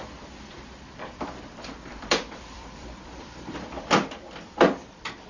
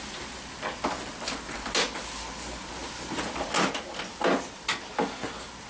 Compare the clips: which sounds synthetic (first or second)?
first